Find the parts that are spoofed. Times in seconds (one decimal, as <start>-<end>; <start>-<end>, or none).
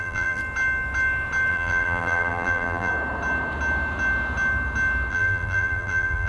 0.0-0.4; 1.5-2.9; 5.1-6.3